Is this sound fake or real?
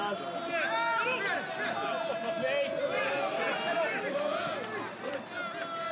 real